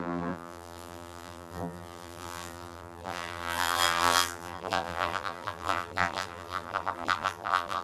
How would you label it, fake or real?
fake